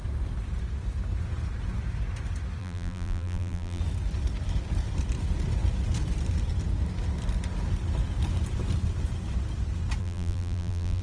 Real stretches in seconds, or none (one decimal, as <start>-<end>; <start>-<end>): 0.0-2.6; 3.8-10.0